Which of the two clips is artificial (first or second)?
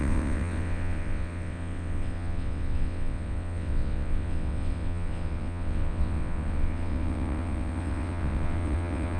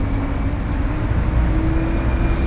first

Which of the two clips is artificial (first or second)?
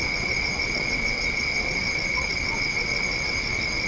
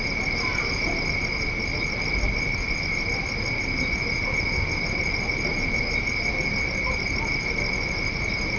first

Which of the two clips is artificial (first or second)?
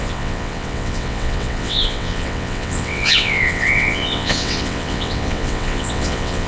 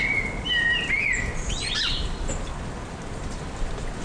first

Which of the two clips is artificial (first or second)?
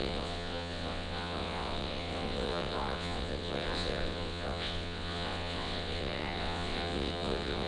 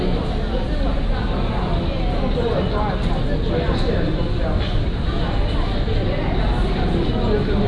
first